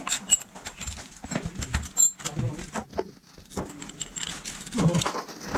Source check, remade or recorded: recorded